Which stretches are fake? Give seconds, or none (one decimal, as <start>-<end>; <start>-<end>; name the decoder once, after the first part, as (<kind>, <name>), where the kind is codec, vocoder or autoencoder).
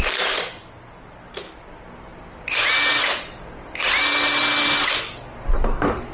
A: none